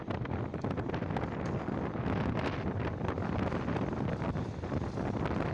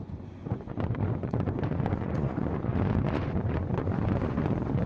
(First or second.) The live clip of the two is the first